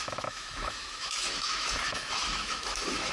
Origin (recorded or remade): remade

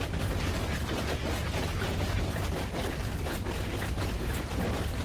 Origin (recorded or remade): recorded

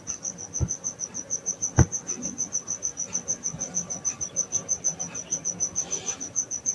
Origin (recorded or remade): recorded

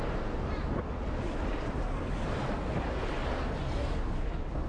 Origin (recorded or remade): recorded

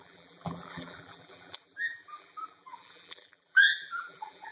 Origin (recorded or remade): remade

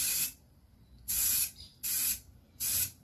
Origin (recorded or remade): remade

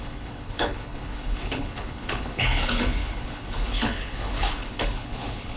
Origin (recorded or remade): remade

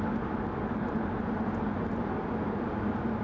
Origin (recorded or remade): recorded